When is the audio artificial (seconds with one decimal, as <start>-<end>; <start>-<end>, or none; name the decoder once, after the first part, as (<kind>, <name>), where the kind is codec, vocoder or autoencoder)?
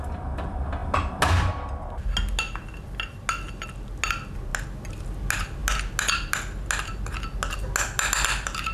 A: none